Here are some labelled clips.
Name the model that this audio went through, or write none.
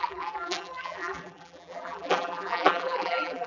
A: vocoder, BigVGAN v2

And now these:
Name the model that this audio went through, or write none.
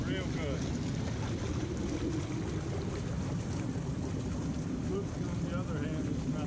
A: none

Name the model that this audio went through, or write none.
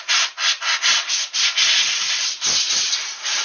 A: vocoder, BigVGAN v2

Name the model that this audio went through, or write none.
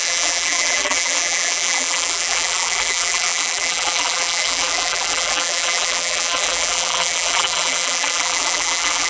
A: vocoder, BigVGAN v2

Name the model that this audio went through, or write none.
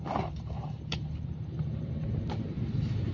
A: vocoder, BigVGAN v2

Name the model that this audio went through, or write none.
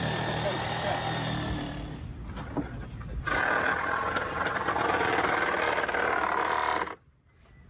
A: vocoder, BigVGAN v2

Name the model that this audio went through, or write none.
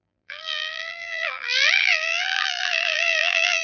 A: vocoder, BigVGAN v2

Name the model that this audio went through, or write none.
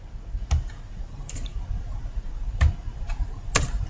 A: none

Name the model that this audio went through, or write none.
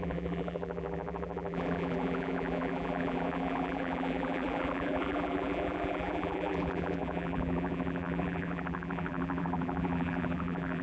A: vocoder, BigVGAN v2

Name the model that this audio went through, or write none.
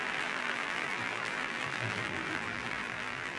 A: vocoder, BigVGAN v2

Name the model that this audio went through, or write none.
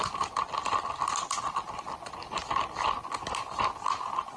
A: none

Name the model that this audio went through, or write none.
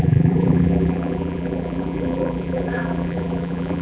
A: vocoder, BigVGAN v2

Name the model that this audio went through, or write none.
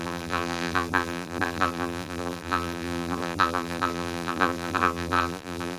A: vocoder, BigVGAN v2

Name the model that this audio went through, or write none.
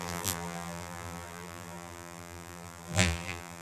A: vocoder, BigVGAN v2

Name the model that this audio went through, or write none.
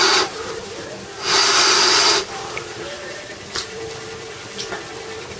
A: vocoder, BigVGAN v2